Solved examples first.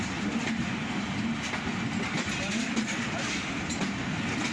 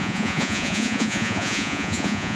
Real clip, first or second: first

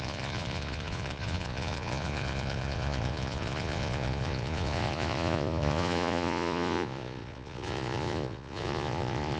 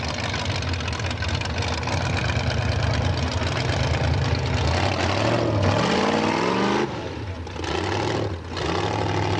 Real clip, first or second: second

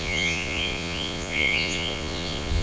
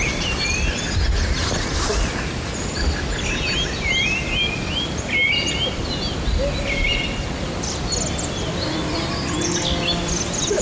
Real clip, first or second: second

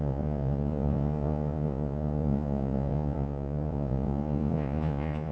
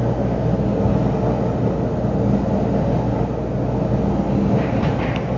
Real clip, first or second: second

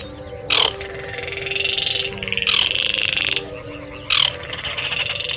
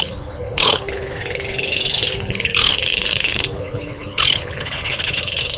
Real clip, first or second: first